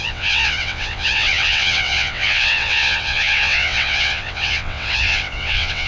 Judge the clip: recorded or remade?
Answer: remade